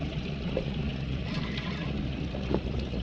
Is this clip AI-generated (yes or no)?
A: yes